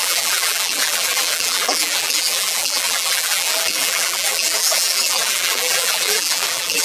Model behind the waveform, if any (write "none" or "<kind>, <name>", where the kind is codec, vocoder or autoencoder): vocoder, BigVGAN v2